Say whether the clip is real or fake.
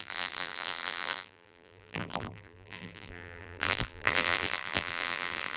fake